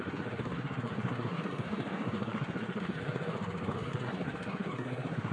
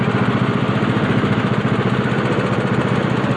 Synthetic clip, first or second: first